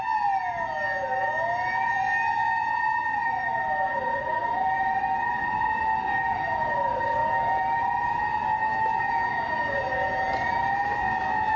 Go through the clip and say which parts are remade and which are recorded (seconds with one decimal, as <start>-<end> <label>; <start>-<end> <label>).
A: 0.0-11.6 recorded